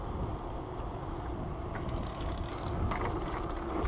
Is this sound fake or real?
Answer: real